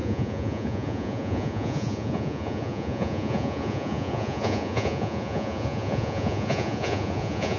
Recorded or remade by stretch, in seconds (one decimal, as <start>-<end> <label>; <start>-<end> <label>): 0.0-7.6 remade